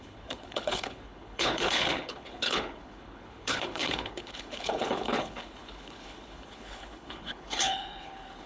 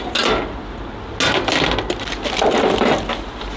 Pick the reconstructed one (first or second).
first